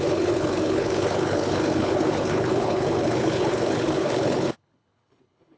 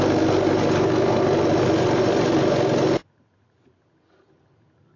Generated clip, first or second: first